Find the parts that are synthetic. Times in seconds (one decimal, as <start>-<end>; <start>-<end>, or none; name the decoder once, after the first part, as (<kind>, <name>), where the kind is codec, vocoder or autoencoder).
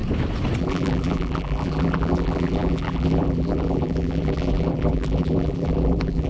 0.6-6.3 (vocoder, BigVGAN v2)